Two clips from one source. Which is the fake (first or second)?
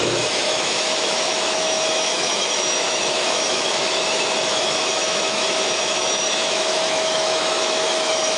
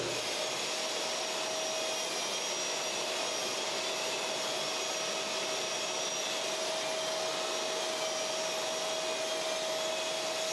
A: first